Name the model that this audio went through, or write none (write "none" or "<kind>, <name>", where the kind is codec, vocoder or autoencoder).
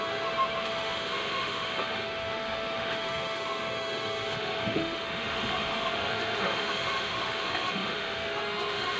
autoencoder, DAC-VAE